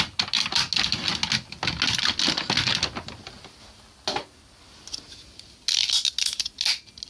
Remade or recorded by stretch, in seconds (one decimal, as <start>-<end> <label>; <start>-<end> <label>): 0.0-7.1 recorded

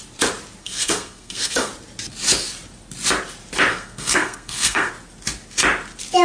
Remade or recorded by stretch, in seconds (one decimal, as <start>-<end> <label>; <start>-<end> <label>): 0.0-0.6 recorded; 0.6-1.7 remade; 1.7-3.7 recorded; 3.7-4.9 remade; 4.9-6.2 recorded

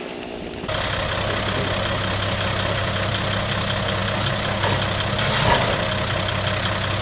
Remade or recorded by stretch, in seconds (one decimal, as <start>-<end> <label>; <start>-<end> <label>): 0.0-7.0 recorded